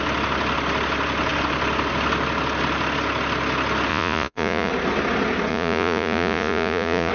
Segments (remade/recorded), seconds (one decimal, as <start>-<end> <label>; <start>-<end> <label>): 0.0-3.9 recorded; 3.9-4.7 remade; 4.7-5.5 recorded; 5.5-7.1 remade